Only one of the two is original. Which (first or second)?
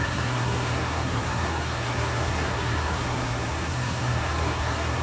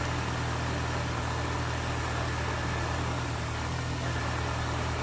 second